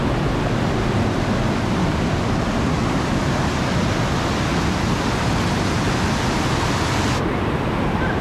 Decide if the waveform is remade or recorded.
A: recorded